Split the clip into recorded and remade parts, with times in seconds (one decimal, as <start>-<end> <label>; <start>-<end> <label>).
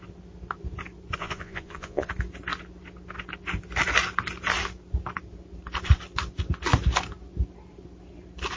0.0-1.2 recorded; 1.2-2.1 remade; 2.1-8.6 recorded